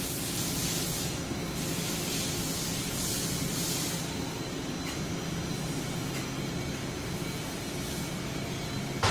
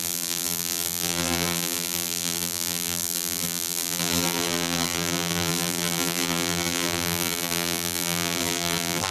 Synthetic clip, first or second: second